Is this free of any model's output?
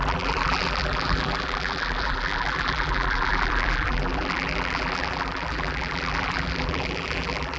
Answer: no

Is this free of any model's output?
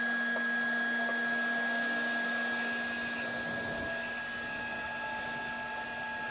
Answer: yes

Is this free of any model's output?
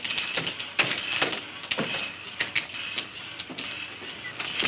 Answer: yes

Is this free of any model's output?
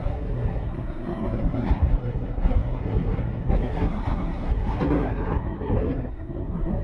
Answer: no